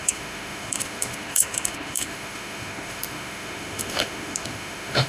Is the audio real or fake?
fake